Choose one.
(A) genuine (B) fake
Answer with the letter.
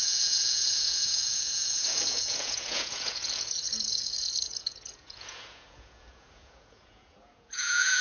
B